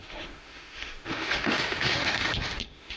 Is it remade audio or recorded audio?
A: remade